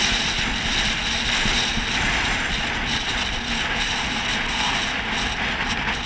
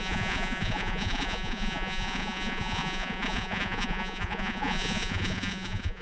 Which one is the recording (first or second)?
first